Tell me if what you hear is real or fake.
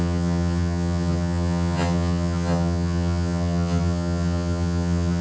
fake